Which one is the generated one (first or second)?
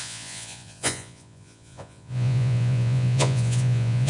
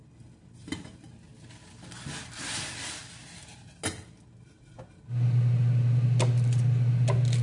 first